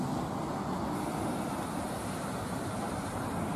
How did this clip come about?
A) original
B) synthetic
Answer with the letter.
B